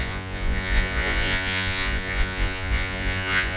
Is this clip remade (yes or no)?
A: yes